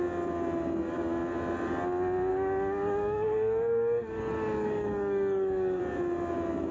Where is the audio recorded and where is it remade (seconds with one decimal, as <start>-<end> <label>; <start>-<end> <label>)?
0.0-2.3 recorded; 2.3-5.8 remade; 5.8-6.7 recorded